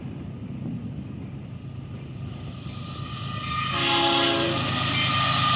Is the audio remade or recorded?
recorded